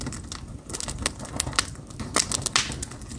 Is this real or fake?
real